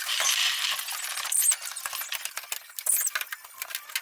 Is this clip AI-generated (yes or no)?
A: no